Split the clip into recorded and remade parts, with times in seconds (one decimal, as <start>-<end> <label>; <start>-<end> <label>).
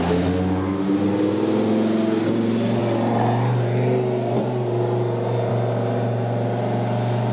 0.0-7.3 recorded